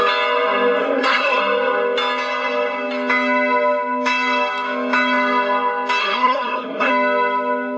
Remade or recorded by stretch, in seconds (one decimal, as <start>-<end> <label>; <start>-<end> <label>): 0.0-0.8 recorded; 0.8-1.4 remade; 1.4-6.0 recorded; 6.0-6.9 remade; 6.9-7.8 recorded